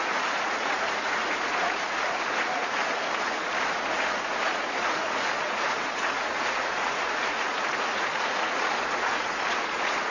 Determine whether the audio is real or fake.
fake